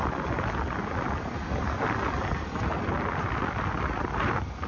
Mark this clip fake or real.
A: real